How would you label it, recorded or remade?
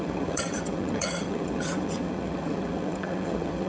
remade